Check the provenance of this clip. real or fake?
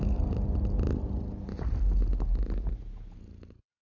real